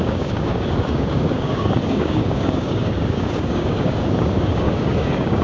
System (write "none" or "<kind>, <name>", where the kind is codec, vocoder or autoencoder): codec, DAC